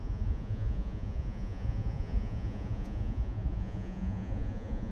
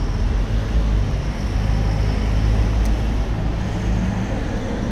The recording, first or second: second